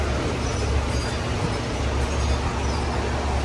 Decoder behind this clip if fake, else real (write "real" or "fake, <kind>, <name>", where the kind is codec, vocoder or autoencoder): real